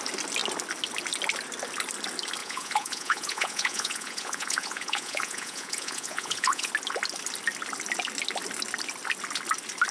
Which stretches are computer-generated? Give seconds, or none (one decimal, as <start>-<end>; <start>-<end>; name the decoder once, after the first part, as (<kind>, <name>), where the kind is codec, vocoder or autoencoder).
2.4-6.7 (vocoder, Vocos)